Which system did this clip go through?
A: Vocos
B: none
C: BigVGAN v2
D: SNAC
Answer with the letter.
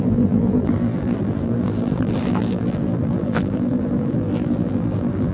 C